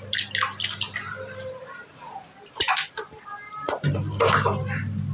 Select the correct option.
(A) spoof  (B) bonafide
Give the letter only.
B